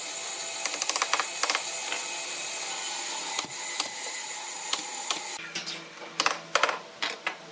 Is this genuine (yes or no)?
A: yes